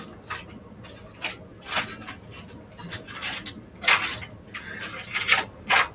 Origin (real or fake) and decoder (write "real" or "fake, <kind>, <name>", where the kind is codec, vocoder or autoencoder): real